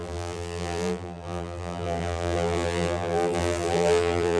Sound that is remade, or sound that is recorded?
remade